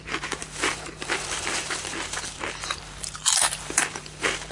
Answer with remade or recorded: remade